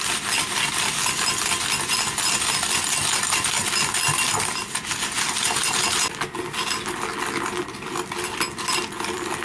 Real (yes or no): yes